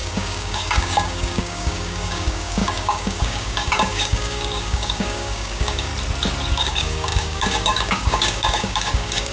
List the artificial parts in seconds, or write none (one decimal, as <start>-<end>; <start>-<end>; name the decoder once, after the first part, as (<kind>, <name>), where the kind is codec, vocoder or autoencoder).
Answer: 0.0-5.9 (codec, DAC); 6.5-9.3